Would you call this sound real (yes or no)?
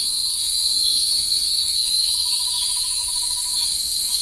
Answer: no